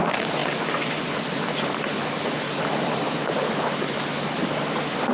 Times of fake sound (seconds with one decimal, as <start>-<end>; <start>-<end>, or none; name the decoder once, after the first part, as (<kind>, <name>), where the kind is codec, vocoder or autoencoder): 0.4-3.5 (vocoder, BigVGAN v2)